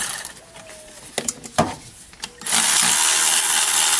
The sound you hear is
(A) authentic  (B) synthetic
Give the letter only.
A